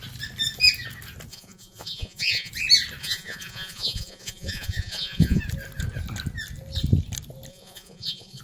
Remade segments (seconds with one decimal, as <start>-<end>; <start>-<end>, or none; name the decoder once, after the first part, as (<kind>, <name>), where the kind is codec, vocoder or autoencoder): 1.3-2.5 (vocoder, Vocos); 3.0-5.4; 7.5-8.4